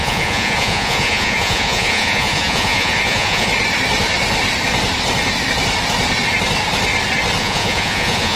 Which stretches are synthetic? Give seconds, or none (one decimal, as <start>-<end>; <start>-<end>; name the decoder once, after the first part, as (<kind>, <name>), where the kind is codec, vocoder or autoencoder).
0.0-3.5 (vocoder, Vocos); 7.4-8.4